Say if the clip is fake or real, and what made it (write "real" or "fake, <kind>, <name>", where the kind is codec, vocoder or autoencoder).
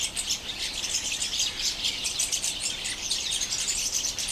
real